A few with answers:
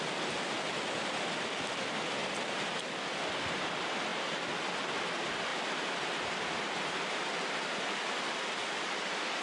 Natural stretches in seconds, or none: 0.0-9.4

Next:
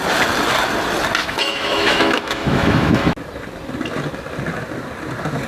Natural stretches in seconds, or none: 0.0-1.2; 3.1-5.5

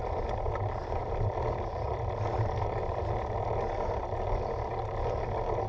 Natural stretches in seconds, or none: 0.0-5.7